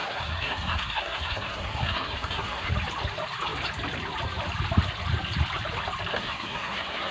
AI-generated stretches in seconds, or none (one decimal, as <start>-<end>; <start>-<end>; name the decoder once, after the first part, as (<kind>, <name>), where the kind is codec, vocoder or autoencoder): 0.0-2.7 (codec, SNAC); 6.1-7.1